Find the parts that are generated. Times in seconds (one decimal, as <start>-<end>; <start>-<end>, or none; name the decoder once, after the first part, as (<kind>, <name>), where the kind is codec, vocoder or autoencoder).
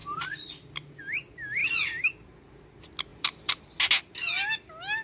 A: 0.0-1.0 (vocoder, BigVGAN v2); 3.1-3.6